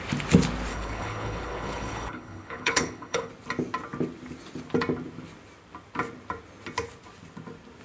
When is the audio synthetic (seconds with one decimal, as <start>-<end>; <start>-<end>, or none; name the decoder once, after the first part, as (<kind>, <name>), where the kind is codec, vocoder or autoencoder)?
0.7-3.3 (codec, HILCodec)